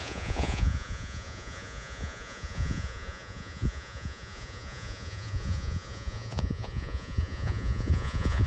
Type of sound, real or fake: fake